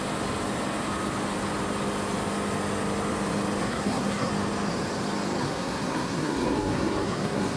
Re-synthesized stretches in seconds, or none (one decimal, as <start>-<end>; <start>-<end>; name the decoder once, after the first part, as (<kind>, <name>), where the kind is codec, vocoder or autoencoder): 3.6-4.3 (codec, SNAC); 5.4-7.6